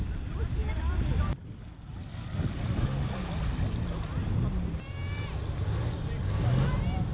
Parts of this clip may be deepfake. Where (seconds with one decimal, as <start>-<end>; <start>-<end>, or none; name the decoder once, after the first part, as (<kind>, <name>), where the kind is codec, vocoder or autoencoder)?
none